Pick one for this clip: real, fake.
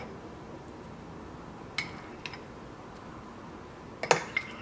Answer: real